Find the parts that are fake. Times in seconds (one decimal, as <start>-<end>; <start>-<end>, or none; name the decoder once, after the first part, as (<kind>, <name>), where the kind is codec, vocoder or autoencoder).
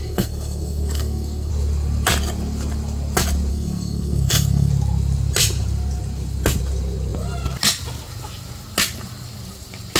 0.0-1.5 (codec, SNAC); 3.5-4.7